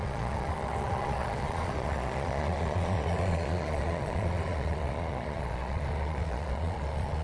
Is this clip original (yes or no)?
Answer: no